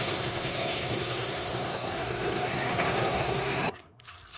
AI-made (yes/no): yes